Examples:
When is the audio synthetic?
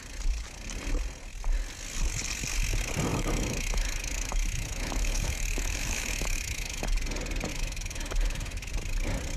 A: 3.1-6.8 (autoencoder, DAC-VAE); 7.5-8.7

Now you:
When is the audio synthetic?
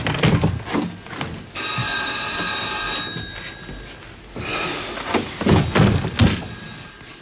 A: 1.8-2.5 (vocoder, BigVGAN v2)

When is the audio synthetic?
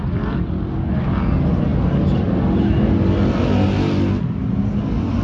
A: none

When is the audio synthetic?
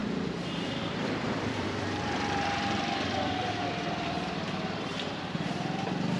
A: 0.0-3.7 (vocoder, BigVGAN v2)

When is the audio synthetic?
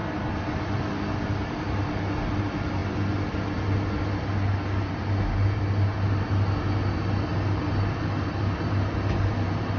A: none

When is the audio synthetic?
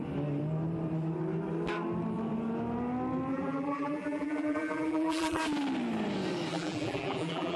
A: 3.3-5.4 (vocoder, BigVGAN v2); 6.5-7.6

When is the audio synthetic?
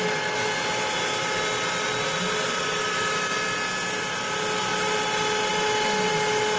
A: none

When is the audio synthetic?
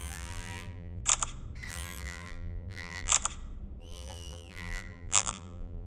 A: 0.0-1.0 (vocoder, BigVGAN v2); 1.7-3.1; 3.8-5.9